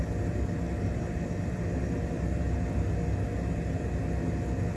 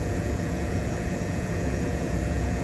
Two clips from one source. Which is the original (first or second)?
first